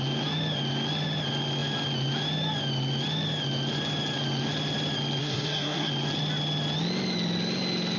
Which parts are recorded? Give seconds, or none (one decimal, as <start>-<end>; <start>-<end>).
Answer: 0.0-5.2; 5.9-8.0